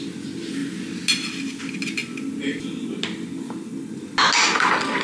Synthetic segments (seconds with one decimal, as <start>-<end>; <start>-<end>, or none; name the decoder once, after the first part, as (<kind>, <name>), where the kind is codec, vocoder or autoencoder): none

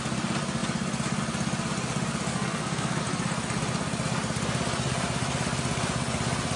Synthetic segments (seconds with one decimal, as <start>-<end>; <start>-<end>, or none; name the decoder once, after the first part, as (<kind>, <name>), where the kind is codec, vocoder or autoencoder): 2.3-3.0 (codec, SNAC)